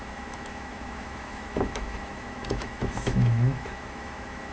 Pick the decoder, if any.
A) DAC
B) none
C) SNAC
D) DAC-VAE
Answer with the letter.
D